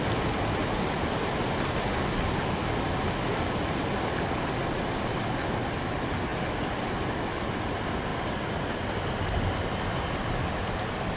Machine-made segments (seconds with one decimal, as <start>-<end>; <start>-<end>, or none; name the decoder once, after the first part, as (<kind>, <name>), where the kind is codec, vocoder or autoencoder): none